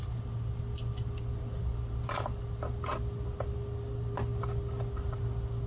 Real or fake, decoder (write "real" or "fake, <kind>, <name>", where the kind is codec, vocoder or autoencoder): real